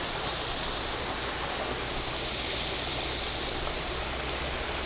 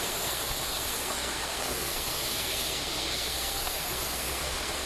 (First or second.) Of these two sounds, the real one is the first